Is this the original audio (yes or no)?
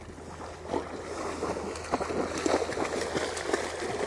yes